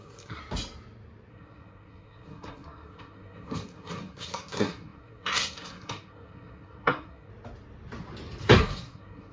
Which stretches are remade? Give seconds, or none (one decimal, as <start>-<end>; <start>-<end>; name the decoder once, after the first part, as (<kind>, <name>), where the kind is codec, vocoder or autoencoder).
0.0-0.4 (codec, SNAC); 1.3-7.3; 8.4-9.3